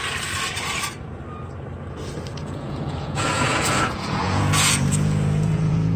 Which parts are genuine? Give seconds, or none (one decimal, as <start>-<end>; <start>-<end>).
0.0-2.3

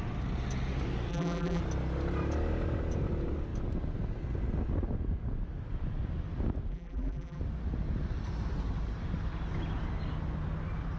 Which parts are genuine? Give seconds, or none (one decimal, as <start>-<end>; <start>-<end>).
0.0-1.1; 1.6-6.7; 7.4-11.0